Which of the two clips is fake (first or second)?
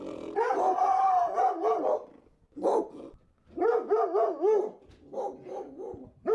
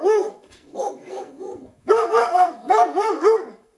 second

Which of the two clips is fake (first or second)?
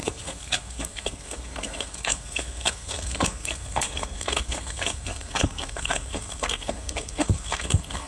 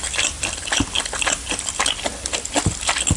first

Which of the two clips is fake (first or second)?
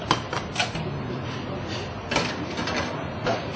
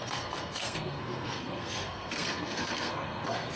second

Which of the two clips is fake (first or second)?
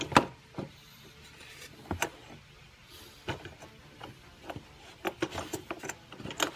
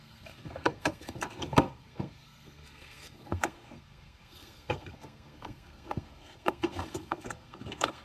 second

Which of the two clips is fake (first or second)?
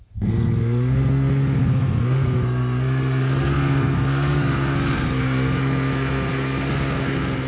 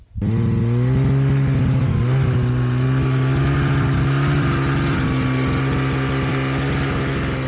first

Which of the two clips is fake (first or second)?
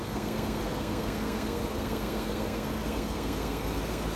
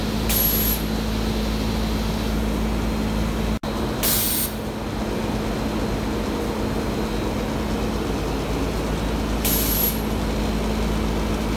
first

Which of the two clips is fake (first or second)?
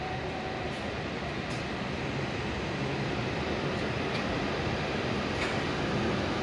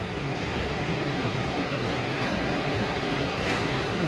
second